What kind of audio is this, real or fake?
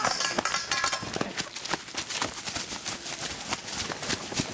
real